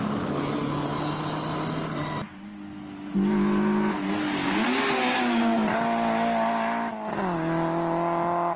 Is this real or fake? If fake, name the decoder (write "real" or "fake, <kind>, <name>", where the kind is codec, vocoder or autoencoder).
real